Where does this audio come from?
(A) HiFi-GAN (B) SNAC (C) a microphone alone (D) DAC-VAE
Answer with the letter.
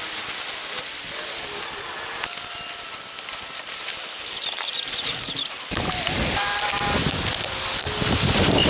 C